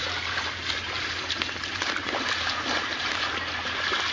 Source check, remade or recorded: remade